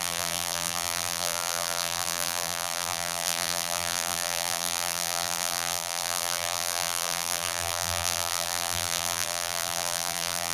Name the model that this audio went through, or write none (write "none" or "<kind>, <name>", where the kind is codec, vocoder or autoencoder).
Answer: vocoder, BigVGAN v2